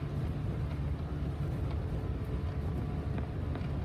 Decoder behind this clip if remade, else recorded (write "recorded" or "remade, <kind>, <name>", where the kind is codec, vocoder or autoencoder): recorded